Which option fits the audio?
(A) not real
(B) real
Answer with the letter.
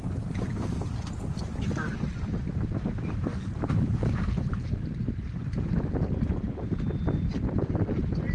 B